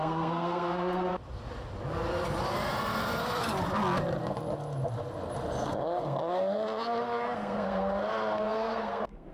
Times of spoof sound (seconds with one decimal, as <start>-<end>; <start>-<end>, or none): 0.0-1.1; 5.6-9.3